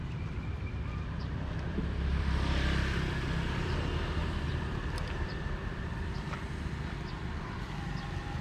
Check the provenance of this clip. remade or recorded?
remade